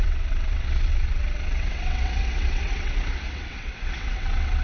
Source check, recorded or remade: remade